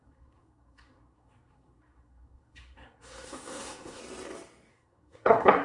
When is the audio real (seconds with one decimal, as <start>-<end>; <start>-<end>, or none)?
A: 4.0-4.7